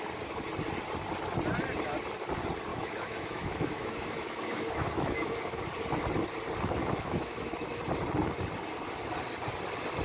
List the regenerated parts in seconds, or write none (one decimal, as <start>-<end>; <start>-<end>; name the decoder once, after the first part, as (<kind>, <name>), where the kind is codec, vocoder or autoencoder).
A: 2.7-5.6 (autoencoder, DAC-VAE); 6.8-7.8